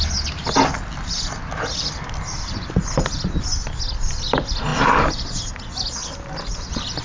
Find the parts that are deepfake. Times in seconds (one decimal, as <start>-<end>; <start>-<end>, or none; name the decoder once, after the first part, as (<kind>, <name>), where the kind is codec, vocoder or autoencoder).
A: none